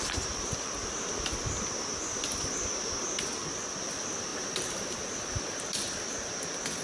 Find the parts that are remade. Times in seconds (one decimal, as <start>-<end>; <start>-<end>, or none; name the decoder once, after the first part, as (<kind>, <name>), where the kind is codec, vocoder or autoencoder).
4.3-5.4 (vocoder, BigVGAN v2)